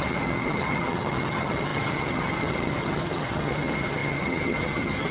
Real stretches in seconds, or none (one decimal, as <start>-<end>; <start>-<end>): none